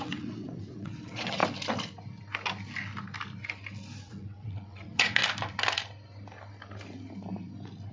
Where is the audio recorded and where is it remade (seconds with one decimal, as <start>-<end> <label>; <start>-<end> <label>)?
0.0-1.4 remade; 1.4-4.0 recorded; 4.0-5.2 remade; 5.2-7.9 recorded